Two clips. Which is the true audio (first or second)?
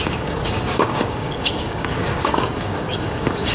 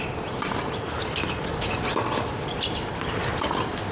second